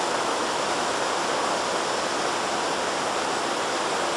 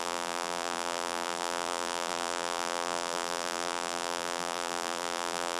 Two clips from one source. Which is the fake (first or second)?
second